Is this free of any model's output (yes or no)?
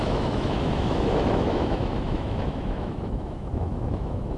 no